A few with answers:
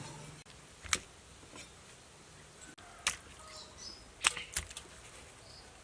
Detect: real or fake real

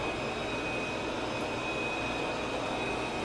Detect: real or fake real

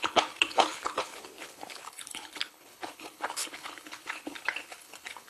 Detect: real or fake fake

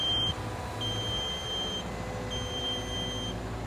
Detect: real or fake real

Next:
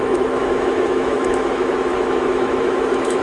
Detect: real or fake fake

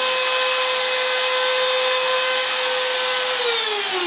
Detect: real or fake real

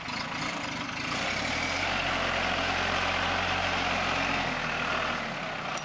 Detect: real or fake real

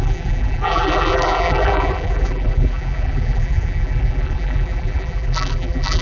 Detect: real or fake fake